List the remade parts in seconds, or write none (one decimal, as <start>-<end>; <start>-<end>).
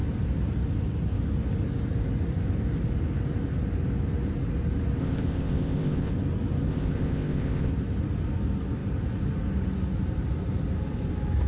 5.0-6.1; 6.7-7.7